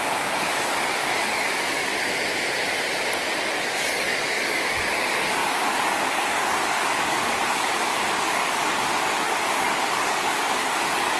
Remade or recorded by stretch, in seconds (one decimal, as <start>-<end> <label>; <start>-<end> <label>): 0.0-1.9 remade; 1.9-3.6 recorded; 3.6-11.2 remade